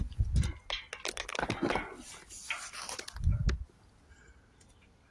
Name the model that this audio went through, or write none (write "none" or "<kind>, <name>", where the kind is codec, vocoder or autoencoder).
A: none